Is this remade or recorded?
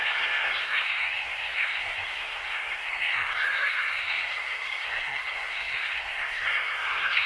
remade